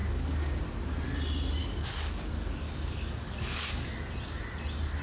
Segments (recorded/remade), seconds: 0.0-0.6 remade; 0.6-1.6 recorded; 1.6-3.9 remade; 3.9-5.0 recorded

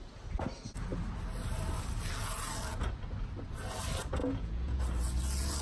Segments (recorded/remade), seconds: 0.0-4.2 recorded; 4.2-4.8 remade; 4.8-5.6 recorded